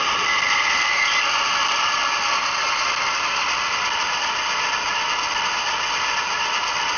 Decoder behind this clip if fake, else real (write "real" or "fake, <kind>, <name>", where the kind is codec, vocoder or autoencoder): real